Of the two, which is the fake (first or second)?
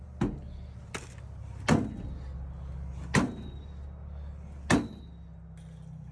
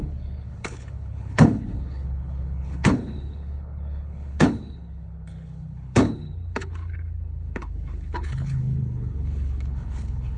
second